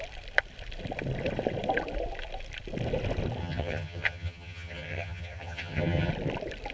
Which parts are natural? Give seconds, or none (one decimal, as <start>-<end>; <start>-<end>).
0.0-3.4; 6.1-6.7